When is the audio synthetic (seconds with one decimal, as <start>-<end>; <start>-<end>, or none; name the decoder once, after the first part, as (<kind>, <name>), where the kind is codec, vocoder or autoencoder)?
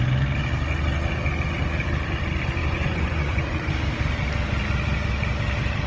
2.6-3.7 (vocoder, Vocos)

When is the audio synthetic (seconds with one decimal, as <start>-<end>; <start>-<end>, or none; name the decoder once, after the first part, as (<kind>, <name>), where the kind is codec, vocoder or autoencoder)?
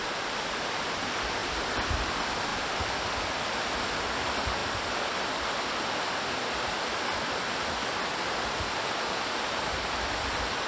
1.4-2.0 (vocoder, BigVGAN v2); 2.5-3.3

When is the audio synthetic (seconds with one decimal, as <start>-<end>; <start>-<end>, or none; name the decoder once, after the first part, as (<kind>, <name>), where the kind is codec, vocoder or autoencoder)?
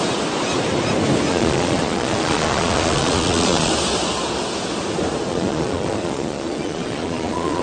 1.3-3.7 (vocoder, Vocos); 5.3-7.6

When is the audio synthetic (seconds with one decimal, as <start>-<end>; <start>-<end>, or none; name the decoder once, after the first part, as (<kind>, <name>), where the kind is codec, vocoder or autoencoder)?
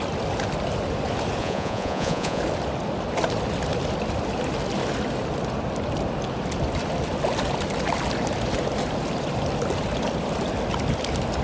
1.4-2.4 (vocoder, Vocos)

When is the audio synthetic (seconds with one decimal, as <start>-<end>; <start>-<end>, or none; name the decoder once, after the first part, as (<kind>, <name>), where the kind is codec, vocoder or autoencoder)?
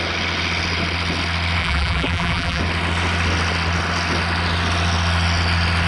1.6-2.6 (vocoder, BigVGAN v2)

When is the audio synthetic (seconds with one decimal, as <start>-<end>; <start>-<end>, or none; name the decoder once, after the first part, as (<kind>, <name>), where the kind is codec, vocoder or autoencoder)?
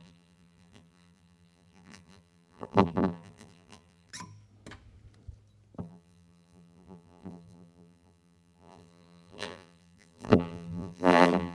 0.0-4.1 (vocoder, BigVGAN v2); 5.8-11.5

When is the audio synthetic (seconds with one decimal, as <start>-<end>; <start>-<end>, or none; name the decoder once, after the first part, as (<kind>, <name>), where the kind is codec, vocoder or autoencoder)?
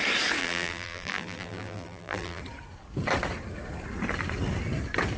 0.4-2.4 (vocoder, BigVGAN v2)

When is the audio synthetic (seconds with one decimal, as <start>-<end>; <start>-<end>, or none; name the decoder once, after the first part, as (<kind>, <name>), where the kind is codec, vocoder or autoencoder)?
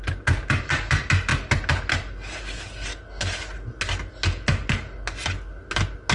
none